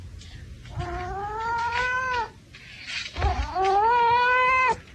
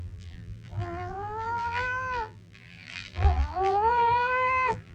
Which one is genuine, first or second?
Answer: first